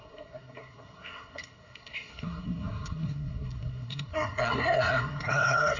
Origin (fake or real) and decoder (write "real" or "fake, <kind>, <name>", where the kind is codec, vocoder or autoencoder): fake, codec, SNAC